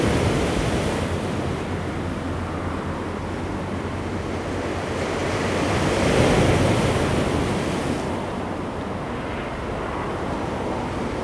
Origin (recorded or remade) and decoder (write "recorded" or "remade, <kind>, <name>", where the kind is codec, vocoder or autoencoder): recorded